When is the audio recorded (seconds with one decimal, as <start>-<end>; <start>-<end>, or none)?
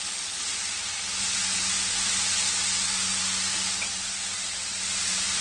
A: 0.0-5.4